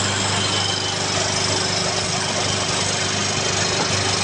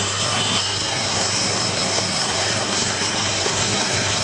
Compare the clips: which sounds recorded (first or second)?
first